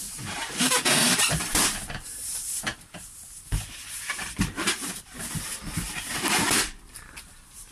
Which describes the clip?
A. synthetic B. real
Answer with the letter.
A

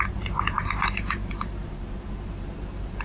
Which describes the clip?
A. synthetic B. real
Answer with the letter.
A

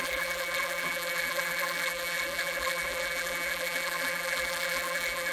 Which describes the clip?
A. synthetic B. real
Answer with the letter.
A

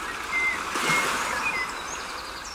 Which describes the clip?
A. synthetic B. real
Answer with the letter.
B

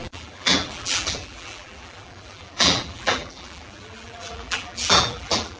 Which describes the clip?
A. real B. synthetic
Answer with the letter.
B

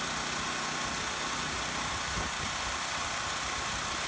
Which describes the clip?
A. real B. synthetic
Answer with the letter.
A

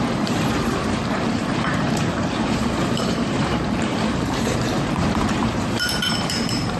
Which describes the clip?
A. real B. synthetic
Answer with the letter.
B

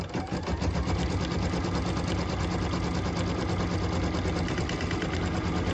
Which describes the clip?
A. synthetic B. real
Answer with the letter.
B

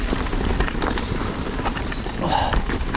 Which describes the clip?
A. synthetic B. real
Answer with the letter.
A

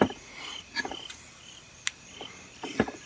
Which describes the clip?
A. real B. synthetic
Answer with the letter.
A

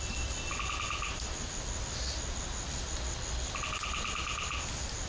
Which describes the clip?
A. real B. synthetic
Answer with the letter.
A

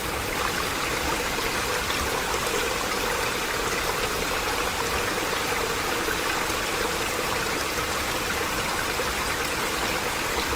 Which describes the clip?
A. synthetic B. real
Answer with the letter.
B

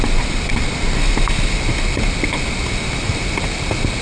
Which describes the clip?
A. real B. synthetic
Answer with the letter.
A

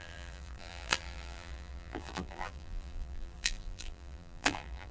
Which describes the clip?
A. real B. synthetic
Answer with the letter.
B